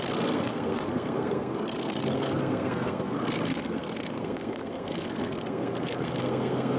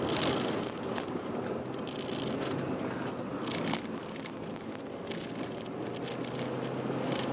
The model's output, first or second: first